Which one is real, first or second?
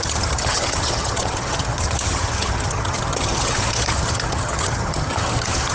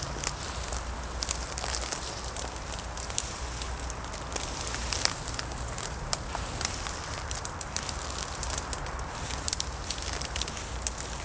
second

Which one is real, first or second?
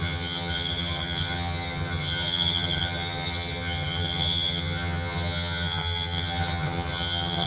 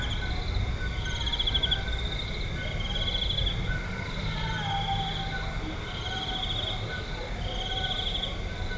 second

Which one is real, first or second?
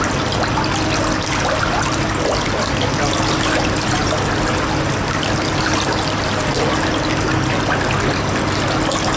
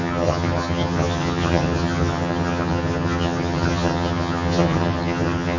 first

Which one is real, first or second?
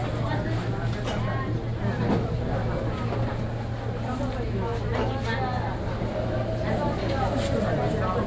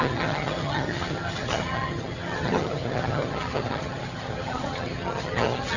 first